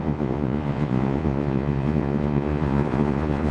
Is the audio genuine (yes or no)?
no